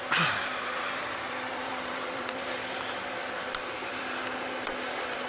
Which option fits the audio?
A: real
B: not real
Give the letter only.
B